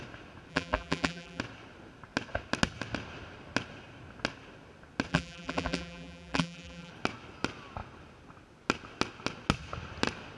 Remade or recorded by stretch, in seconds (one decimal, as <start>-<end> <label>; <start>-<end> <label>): 0.0-0.5 recorded; 0.5-1.4 remade; 1.4-5.1 recorded; 5.1-6.9 remade; 6.9-10.4 recorded